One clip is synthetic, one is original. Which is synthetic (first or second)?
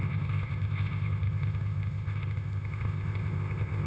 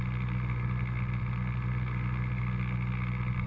first